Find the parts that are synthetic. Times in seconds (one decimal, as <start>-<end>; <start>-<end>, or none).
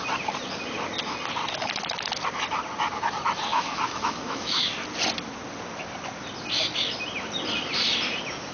3.5-4.7